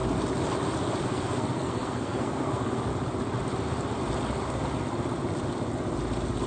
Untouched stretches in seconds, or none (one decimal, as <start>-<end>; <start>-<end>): 0.0-1.0; 2.9-6.5